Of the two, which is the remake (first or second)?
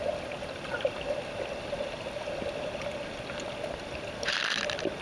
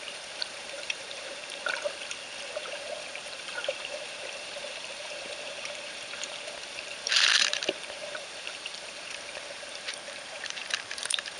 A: second